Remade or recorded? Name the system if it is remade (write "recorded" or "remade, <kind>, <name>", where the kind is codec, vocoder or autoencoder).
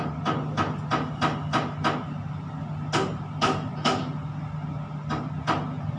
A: recorded